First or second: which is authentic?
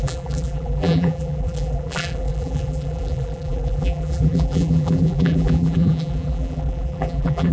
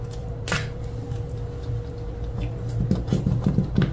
second